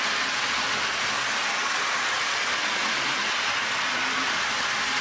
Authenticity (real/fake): real